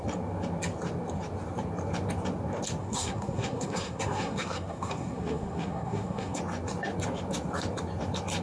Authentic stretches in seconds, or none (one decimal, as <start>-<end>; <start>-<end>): 0.0-2.8; 6.4-8.4